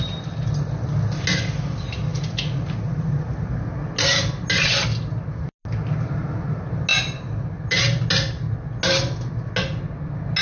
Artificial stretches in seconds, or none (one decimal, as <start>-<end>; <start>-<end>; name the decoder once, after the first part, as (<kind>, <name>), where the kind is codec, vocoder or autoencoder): none